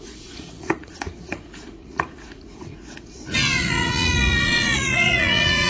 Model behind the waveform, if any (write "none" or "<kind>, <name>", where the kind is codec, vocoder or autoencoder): vocoder, Vocos